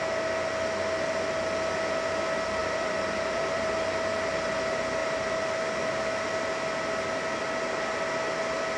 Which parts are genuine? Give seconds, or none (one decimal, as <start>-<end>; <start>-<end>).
0.0-2.6; 3.7-8.8

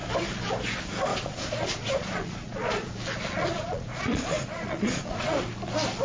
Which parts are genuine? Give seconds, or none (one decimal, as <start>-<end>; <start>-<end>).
0.0-1.1; 2.9-3.4; 5.3-6.0

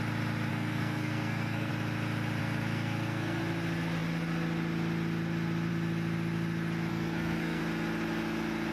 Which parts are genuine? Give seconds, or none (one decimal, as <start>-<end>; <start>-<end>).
0.0-0.5; 1.7-2.4; 3.4-6.9; 7.6-8.7

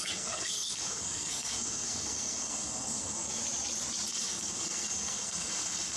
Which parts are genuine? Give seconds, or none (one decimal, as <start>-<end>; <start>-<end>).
3.4-4.1

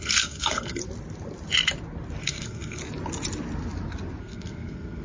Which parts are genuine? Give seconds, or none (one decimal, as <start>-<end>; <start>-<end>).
0.8-2.2; 2.8-4.2